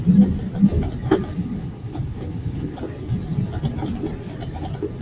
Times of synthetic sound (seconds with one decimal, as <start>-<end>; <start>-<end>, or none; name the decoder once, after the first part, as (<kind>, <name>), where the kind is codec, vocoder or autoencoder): 1.4-2.8 (codec, HILCodec)